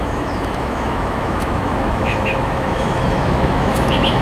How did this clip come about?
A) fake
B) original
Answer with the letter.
A